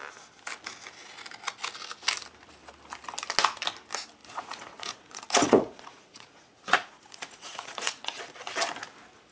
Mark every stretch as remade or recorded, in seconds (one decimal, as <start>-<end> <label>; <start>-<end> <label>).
0.0-4.2 recorded; 4.2-8.2 remade; 8.2-9.3 recorded